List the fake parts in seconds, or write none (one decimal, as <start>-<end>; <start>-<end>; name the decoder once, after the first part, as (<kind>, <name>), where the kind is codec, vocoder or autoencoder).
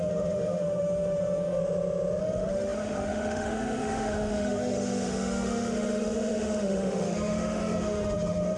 0.0-1.6 (autoencoder, DAC-VAE); 2.2-8.6